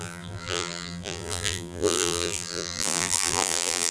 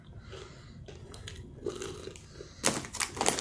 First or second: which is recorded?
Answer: second